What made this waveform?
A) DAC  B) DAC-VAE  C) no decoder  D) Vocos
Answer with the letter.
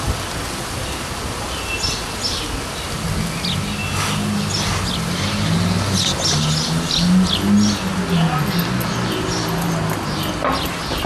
C